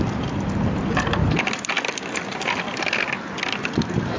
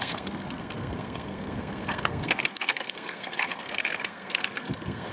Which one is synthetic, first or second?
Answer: second